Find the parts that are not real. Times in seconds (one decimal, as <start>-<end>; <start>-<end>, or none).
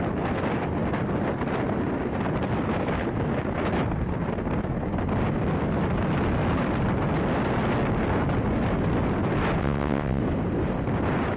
9.6-10.2